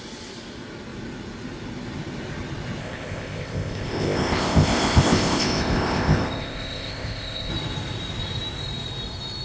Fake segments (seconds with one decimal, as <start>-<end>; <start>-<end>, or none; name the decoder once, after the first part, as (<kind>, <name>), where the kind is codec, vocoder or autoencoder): 2.8-7.5 (codec, ZipCodec)